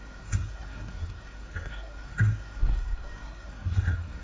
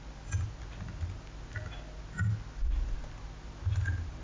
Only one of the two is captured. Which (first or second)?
second